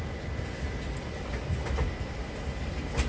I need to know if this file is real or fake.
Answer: real